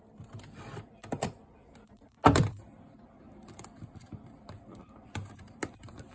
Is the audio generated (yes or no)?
yes